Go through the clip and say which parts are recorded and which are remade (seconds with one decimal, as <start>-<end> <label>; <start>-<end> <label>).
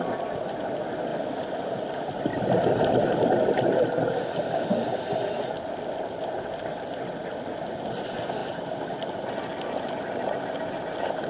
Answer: 0.0-11.3 recorded